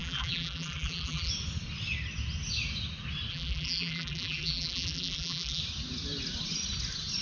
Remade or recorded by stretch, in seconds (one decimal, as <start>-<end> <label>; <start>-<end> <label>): 0.0-1.3 remade; 1.3-3.3 recorded; 3.3-5.6 remade; 5.6-7.2 recorded